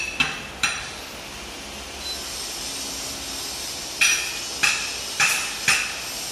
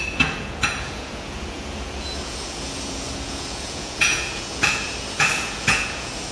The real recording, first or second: first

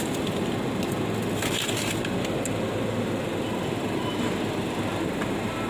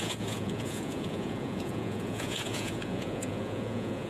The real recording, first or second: first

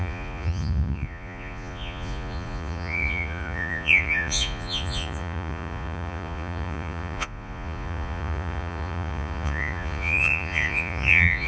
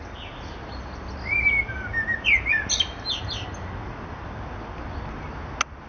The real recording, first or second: second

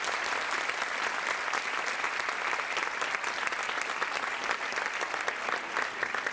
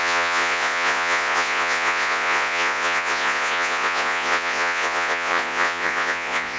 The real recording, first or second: first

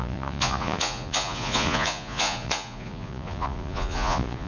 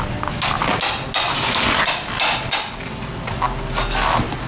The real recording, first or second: second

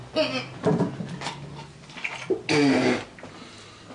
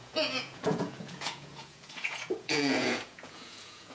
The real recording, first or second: first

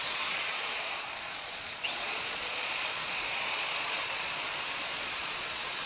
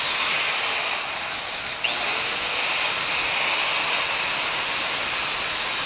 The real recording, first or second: second